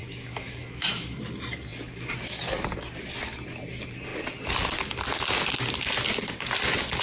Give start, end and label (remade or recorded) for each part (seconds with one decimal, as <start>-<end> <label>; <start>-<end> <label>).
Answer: 0.0-1.2 remade; 1.2-7.0 recorded